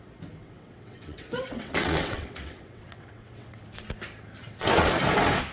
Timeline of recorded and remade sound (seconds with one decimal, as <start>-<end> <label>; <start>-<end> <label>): 0.0-0.4 recorded; 0.4-3.6 remade; 3.6-4.4 recorded; 4.4-4.9 remade; 4.9-5.5 recorded

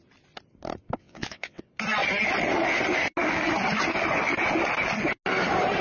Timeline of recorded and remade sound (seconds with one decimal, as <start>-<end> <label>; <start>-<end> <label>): 0.0-1.0 recorded; 1.0-1.6 remade; 1.6-5.8 recorded

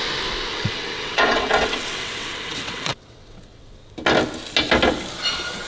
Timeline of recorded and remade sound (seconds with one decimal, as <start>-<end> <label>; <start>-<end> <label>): 0.0-0.5 recorded; 0.5-3.9 remade; 3.9-5.7 recorded

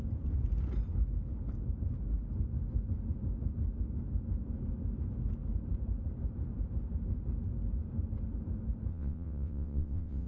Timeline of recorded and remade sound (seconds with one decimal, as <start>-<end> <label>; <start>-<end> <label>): 0.0-8.9 recorded; 8.9-10.3 remade

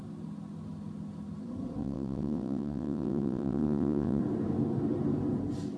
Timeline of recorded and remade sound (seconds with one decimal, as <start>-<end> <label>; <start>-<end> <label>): 0.0-1.8 recorded; 1.8-4.2 remade; 4.2-5.8 recorded

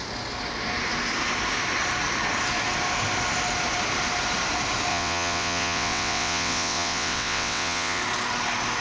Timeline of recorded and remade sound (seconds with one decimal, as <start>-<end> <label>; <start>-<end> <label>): 0.0-4.9 recorded; 4.9-8.0 remade; 8.0-8.8 recorded